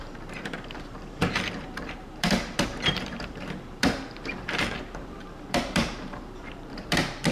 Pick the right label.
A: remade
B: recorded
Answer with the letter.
A